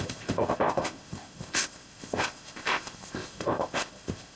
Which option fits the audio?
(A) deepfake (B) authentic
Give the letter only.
A